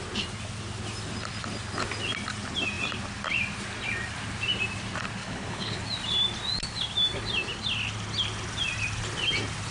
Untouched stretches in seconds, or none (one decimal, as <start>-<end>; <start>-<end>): 0.0-5.2; 5.8-9.7